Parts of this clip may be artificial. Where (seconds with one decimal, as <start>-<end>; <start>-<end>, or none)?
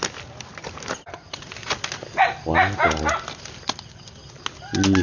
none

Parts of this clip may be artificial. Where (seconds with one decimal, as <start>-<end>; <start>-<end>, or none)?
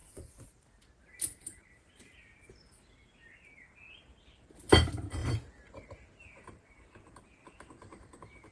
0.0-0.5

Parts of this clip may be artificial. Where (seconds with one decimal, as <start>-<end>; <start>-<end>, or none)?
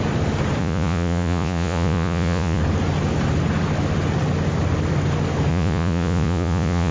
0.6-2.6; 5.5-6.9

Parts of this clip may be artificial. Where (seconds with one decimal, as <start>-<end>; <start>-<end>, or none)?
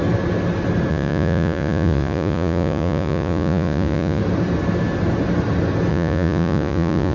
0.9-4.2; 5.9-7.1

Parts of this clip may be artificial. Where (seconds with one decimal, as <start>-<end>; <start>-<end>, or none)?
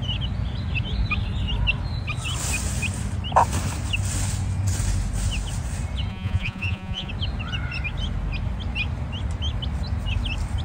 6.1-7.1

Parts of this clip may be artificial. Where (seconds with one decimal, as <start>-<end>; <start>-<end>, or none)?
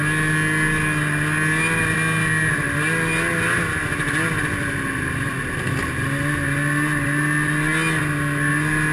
none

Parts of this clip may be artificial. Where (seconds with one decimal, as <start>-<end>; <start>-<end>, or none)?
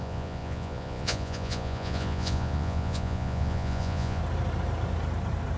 0.0-4.2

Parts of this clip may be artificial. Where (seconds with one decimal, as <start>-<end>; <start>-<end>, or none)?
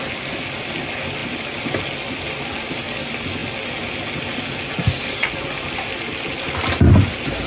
none